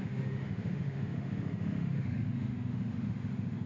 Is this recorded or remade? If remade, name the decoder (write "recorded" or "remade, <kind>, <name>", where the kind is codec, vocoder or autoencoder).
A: remade, autoencoder, DAC-VAE